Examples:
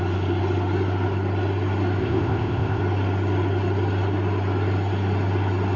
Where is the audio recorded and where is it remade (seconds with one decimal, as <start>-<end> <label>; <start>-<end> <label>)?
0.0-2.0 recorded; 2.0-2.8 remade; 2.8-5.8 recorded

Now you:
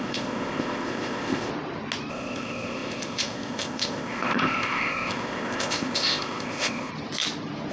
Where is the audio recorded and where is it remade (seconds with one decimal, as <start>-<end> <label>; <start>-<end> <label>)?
0.0-1.5 remade; 1.5-2.1 recorded; 2.1-6.9 remade; 6.9-7.7 recorded

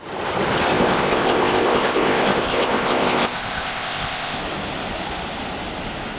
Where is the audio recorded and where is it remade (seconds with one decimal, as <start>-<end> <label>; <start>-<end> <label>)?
0.0-0.7 recorded; 0.7-4.4 remade; 4.4-6.2 recorded